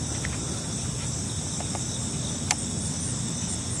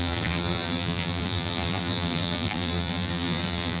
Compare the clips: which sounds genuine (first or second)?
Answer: first